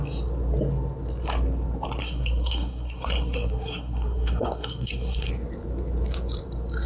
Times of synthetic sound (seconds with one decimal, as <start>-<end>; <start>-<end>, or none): 2.0-5.3